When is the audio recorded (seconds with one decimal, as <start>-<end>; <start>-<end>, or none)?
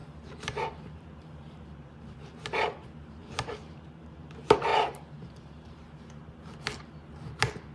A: 2.4-3.2; 4.3-4.7; 6.0-7.7